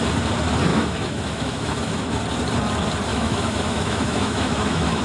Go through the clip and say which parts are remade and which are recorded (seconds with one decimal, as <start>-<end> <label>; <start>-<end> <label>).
0.0-0.7 recorded; 0.7-2.2 remade; 2.2-3.1 recorded; 3.1-5.0 remade